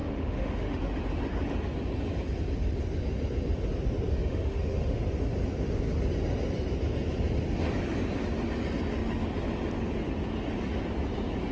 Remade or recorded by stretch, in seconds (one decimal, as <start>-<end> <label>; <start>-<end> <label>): 0.0-0.8 remade; 0.8-4.1 recorded; 4.1-5.0 remade; 5.0-11.5 recorded